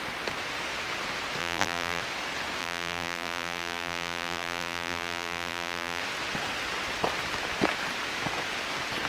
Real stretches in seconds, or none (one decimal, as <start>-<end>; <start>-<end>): 0.0-1.4; 2.0-2.6; 6.0-9.1